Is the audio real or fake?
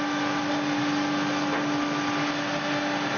real